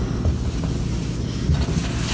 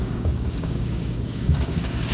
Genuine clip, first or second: first